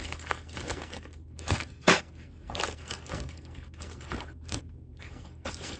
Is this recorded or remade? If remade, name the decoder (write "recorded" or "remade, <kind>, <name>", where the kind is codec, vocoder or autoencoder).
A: remade, codec, SNAC